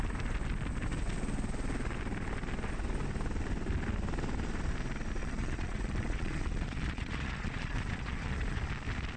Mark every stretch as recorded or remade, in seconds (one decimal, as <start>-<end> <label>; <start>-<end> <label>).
0.0-5.2 recorded; 5.2-8.6 remade; 8.6-9.2 recorded